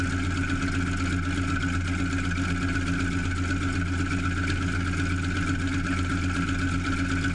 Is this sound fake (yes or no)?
no